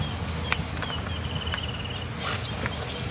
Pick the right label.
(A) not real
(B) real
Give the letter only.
B